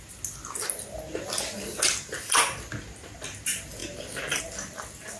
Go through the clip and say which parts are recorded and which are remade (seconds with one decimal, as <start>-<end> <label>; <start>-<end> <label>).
0.0-5.2 recorded